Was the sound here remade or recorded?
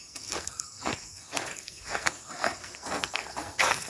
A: remade